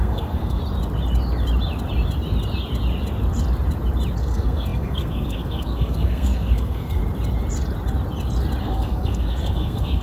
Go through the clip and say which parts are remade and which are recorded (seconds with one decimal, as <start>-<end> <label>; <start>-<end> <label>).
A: 0.0-0.6 remade; 0.6-4.2 recorded; 4.2-7.0 remade; 7.0-8.6 recorded; 8.6-10.0 remade